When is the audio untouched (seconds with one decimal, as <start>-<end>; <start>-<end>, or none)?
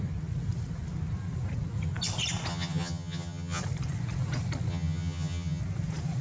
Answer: 0.0-2.5; 3.6-4.7; 5.6-6.2